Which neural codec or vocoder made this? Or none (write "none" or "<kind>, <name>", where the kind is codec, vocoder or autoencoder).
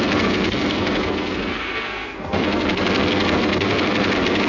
codec, SNAC